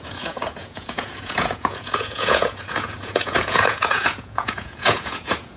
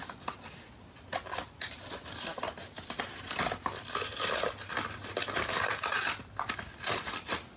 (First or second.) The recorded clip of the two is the second